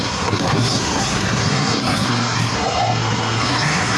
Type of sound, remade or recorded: remade